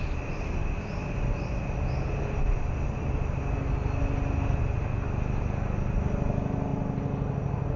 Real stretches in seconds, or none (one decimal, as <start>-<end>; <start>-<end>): 0.0-7.8